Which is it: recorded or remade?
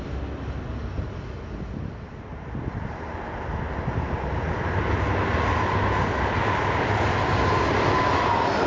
recorded